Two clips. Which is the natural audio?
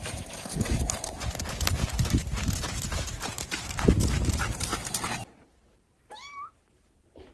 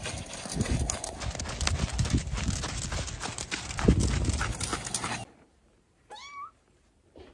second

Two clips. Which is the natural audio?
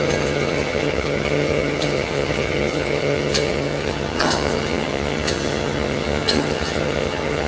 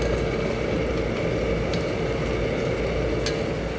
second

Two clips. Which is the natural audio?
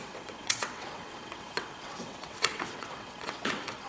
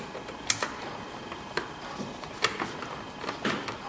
second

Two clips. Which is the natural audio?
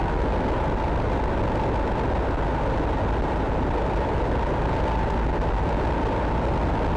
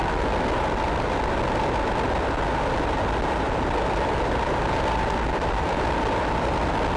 first